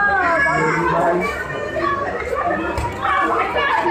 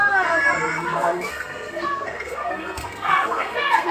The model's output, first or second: second